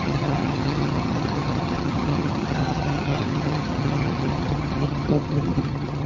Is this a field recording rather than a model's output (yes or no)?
no